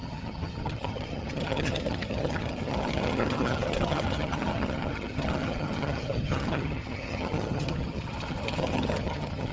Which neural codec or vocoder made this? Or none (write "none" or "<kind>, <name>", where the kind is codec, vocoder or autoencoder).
vocoder, HiFi-GAN